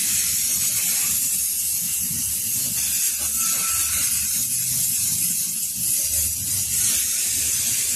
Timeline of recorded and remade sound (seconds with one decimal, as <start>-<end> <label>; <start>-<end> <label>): 0.0-1.7 recorded; 1.7-2.3 remade; 2.3-8.0 recorded